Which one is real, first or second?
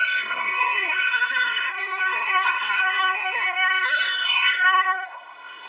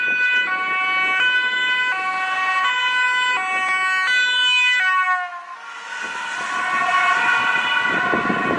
second